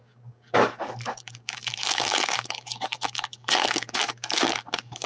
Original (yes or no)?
no